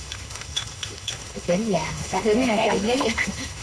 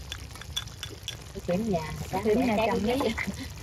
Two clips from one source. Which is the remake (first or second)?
first